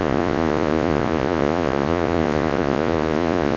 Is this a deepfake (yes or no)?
yes